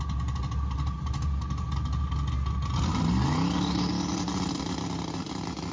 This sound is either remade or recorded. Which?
recorded